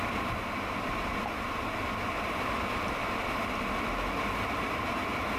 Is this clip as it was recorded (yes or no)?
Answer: yes